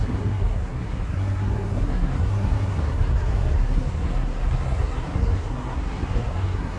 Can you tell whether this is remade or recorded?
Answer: remade